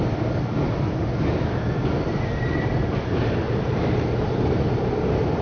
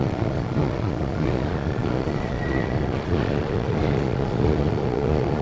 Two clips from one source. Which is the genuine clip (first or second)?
first